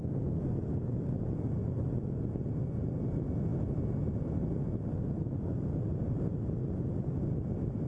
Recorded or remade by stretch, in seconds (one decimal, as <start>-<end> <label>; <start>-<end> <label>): 0.0-7.9 recorded